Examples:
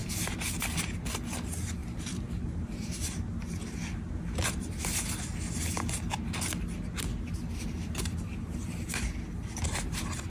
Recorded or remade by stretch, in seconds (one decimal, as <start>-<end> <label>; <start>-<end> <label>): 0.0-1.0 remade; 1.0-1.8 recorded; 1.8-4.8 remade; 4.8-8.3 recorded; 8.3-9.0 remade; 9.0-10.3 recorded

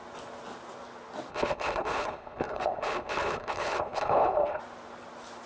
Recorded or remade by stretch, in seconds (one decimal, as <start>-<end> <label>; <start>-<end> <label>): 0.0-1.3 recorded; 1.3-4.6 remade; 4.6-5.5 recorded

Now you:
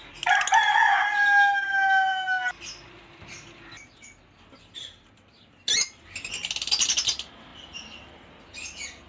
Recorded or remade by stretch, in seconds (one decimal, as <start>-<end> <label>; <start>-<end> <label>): 0.0-9.1 recorded